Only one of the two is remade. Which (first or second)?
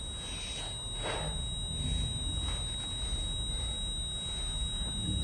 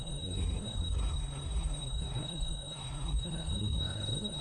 second